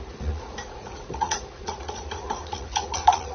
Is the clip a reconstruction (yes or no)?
yes